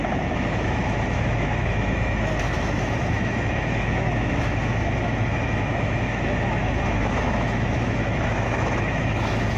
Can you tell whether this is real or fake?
fake